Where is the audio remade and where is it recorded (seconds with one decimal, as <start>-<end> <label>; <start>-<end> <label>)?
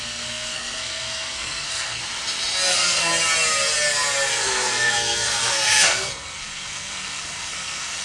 0.0-2.0 remade; 2.0-2.7 recorded; 2.7-3.1 remade; 3.1-4.3 recorded; 4.3-8.0 remade